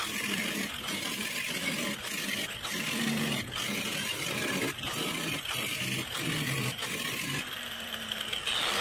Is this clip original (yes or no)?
no